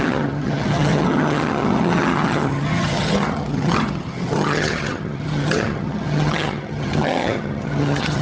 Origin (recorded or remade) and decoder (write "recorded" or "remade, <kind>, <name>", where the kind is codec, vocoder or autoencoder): remade, vocoder, HiFi-GAN